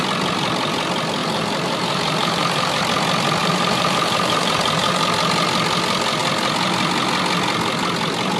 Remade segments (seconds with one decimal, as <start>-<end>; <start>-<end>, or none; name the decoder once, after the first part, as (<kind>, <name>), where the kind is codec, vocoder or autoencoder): 1.2-2.8 (vocoder, BigVGAN v2); 3.4-4.9